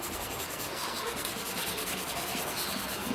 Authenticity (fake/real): fake